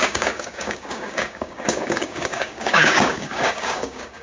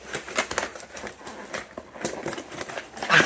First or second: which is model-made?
first